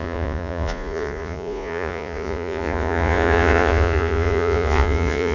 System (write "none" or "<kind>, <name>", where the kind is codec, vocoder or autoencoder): vocoder, Vocos